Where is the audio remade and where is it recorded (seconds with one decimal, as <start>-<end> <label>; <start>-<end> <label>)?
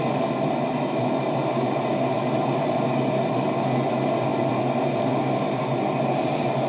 0.0-6.7 recorded